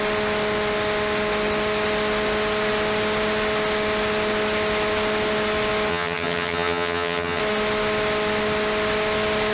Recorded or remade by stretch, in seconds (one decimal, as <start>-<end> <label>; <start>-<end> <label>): 0.0-5.9 recorded; 5.9-7.4 remade; 7.4-9.5 recorded